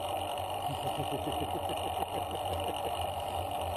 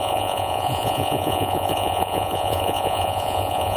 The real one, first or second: first